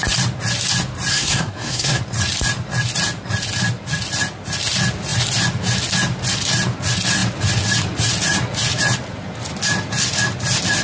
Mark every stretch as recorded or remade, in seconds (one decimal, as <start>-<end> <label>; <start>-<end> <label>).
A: 0.0-1.1 recorded; 1.1-2.0 remade; 2.0-10.8 recorded